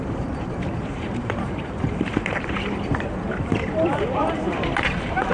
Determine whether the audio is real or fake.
fake